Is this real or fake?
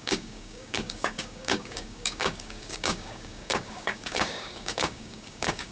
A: fake